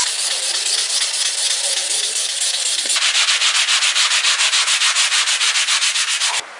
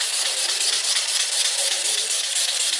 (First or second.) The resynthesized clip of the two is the second